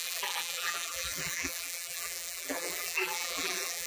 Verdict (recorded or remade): remade